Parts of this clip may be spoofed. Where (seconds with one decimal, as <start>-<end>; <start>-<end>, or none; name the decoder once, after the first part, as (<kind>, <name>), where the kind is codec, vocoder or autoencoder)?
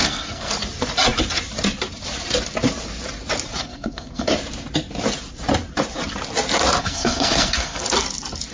0.0-0.5 (codec, SNAC); 3.6-4.3; 6.8-7.8